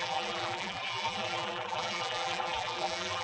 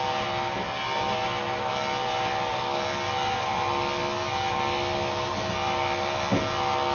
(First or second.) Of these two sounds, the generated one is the first